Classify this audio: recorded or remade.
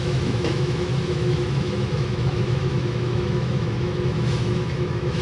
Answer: remade